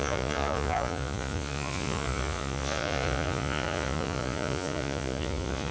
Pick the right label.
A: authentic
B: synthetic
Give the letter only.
B